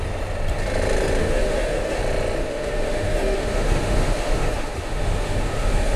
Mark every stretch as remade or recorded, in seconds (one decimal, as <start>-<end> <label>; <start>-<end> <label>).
0.0-1.2 recorded; 1.2-2.0 remade; 2.0-2.4 recorded; 2.4-6.0 remade